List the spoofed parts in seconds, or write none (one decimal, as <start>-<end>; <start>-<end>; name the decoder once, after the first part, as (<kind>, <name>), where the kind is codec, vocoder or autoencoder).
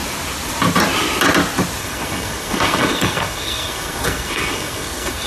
1.8-5.3 (codec, SNAC)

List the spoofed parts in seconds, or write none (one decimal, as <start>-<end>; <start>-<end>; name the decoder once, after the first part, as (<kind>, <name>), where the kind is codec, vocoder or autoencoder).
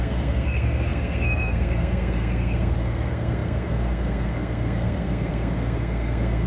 0.0-6.5 (codec, SNAC)